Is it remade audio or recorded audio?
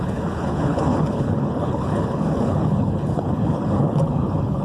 remade